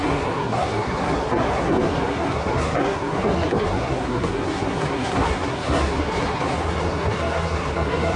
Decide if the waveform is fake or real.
fake